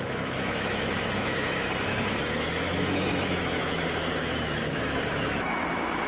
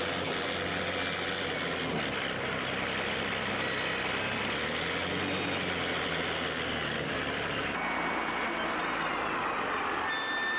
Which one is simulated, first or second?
first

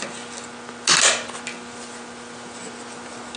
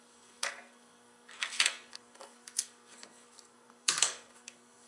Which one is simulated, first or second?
second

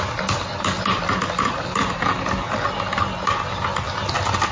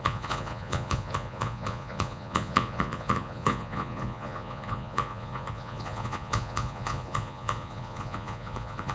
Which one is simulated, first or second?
second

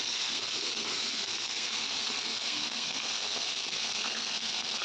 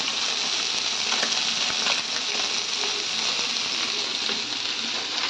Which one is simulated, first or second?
first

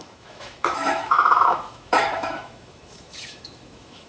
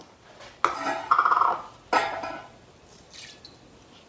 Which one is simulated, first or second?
first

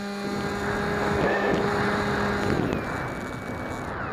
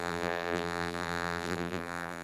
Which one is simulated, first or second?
second